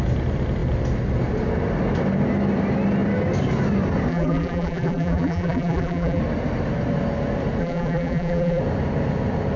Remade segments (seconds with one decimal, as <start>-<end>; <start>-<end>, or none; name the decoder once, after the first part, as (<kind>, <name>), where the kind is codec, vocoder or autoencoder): 4.1-6.2 (vocoder, BigVGAN v2); 7.6-8.6